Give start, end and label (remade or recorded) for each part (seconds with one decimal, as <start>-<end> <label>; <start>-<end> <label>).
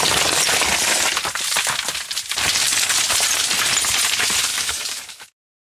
0.0-4.5 recorded; 4.5-5.6 remade